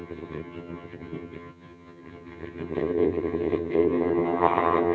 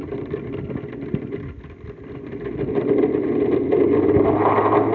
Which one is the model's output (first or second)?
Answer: first